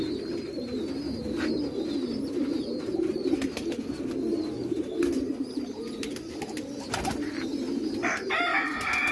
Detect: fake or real real